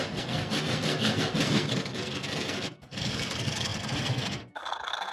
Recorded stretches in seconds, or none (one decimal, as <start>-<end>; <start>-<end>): none